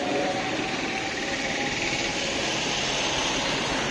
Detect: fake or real real